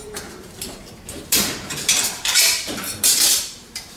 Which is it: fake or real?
fake